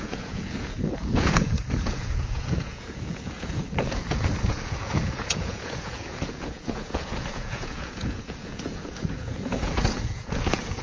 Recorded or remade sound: remade